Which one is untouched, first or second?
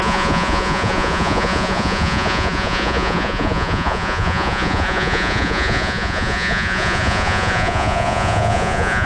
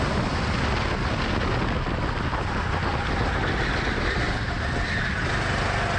second